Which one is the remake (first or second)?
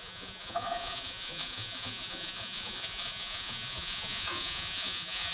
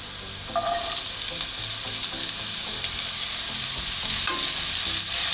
first